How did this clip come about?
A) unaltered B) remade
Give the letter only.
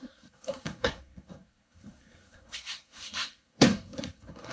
B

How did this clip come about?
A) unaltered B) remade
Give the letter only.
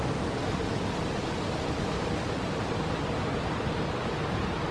A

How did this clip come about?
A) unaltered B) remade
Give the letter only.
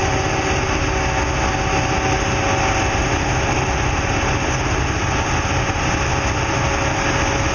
A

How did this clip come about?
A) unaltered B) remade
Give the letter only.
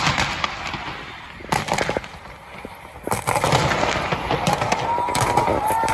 A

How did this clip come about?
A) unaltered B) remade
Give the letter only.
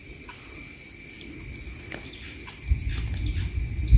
A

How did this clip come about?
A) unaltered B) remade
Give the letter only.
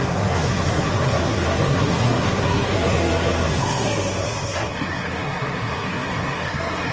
B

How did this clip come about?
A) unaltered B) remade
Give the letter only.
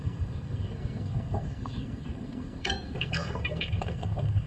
B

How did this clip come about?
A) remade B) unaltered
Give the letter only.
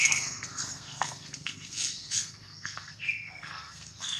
A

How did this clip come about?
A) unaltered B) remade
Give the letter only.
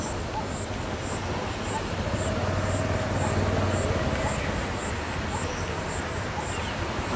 A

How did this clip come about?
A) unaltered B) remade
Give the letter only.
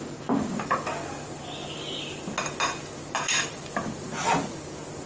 A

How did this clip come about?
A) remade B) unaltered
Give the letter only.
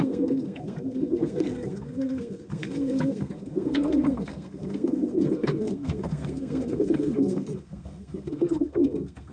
A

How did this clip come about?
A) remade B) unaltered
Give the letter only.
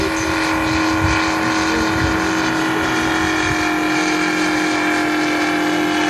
B